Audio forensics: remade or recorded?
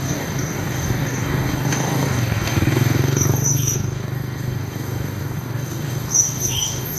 remade